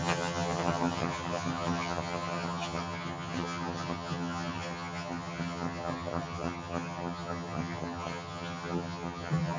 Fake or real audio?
fake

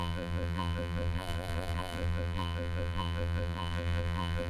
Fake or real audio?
fake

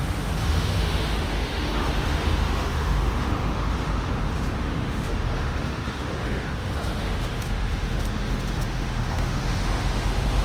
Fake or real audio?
fake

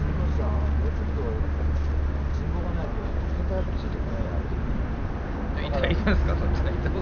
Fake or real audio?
real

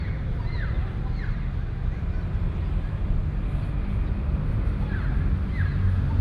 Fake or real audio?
real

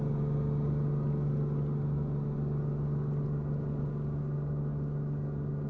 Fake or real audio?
real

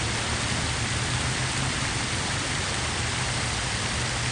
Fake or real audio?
real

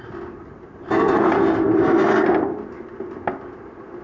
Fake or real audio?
real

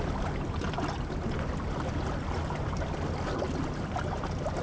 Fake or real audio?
real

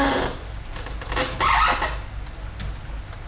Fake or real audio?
real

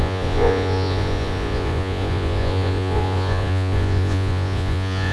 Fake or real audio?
fake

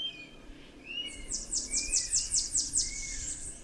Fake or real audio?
fake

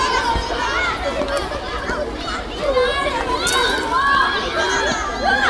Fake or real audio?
real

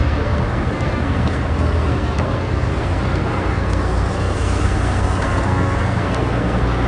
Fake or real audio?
fake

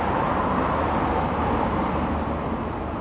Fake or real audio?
real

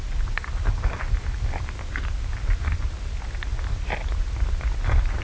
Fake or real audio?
real